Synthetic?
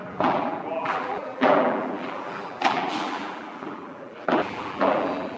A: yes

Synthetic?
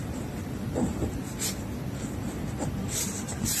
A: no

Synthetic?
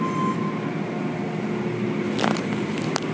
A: no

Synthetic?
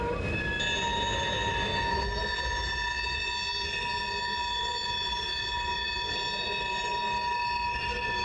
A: no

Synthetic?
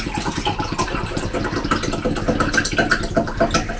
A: no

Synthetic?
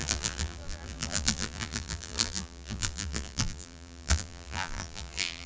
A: yes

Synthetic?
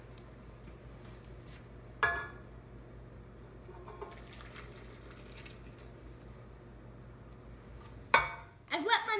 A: no